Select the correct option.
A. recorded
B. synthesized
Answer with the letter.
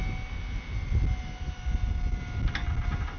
A